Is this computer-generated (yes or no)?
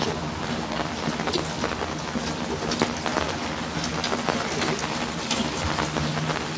no